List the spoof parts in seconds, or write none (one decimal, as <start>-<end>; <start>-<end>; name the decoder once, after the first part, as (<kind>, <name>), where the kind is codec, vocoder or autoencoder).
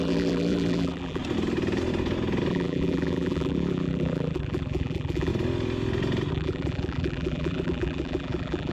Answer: 0.0-1.2 (vocoder, BigVGAN v2); 2.5-5.3; 6.3-8.7